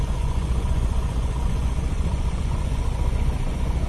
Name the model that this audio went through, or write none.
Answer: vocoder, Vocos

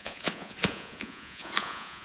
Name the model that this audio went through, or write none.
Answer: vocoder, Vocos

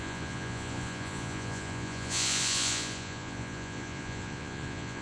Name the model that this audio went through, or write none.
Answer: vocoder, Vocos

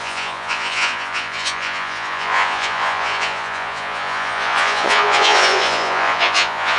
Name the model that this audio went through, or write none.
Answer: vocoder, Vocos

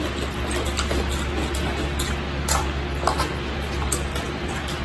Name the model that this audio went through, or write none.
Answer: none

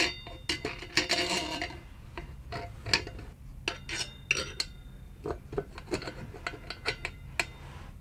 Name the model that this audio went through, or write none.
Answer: none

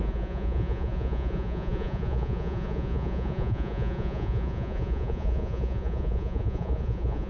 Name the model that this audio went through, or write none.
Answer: vocoder, Vocos